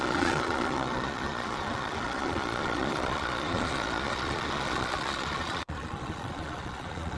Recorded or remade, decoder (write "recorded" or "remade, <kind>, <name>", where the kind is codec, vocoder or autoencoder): remade, vocoder, Vocos